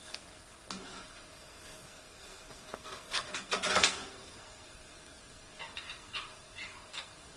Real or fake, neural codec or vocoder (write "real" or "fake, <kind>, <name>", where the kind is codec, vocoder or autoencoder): fake, codec, SNAC